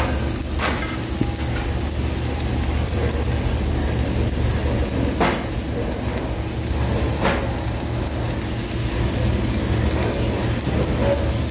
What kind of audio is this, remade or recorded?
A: recorded